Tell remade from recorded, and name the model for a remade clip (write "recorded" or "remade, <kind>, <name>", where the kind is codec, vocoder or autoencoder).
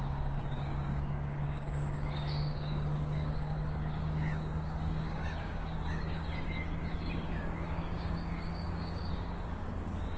remade, codec, DAC